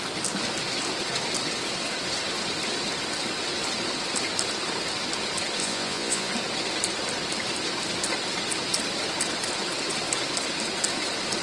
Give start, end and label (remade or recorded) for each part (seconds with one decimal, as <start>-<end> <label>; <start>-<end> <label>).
0.0-5.6 recorded; 5.6-6.3 remade; 6.3-11.4 recorded